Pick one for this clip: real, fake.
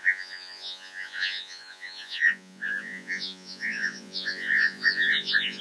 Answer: fake